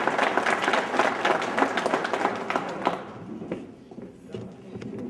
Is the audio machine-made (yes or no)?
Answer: no